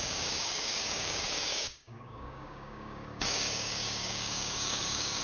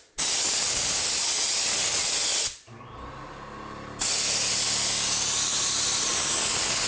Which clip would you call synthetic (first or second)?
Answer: first